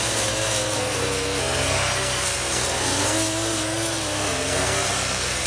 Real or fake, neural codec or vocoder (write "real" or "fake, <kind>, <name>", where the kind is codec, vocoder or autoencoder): fake, codec, SNAC